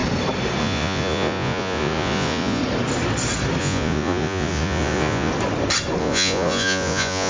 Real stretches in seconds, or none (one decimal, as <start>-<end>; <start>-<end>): 0.0-0.6; 2.6-3.6; 5.3-6.0

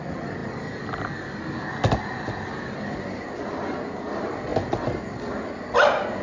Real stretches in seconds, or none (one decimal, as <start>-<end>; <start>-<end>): 0.0-6.2

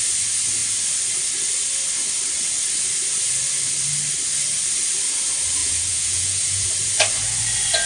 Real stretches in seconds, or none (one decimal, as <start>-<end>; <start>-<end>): 0.0-5.6; 6.7-7.9

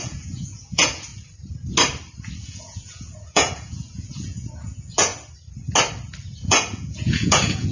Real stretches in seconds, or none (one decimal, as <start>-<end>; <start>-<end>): 1.1-2.4; 5.1-6.4

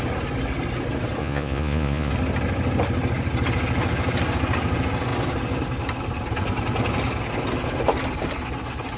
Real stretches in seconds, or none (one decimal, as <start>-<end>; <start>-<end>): 0.0-1.2; 2.1-9.0